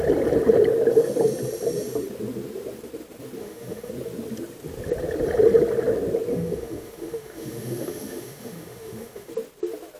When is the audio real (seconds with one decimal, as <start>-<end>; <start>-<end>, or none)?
0.0-3.4; 3.9-6.3; 9.3-10.0